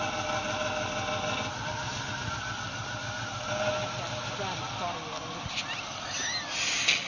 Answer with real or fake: real